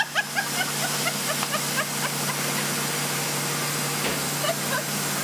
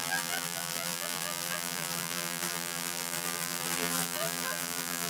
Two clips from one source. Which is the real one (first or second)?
first